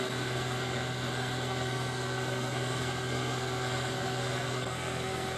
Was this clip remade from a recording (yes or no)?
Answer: yes